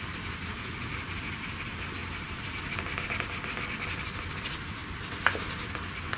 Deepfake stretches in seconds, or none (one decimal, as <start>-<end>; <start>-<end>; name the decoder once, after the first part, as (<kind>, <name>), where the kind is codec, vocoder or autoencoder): 2.0-2.6 (vocoder, BigVGAN v2)